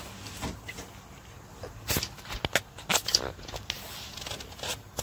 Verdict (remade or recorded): recorded